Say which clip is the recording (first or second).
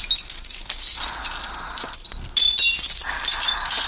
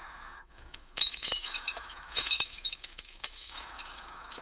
first